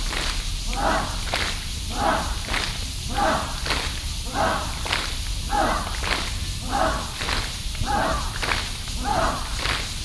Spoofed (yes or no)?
no